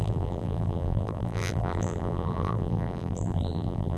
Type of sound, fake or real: fake